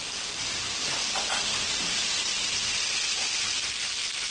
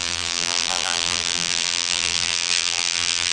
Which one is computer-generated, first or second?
second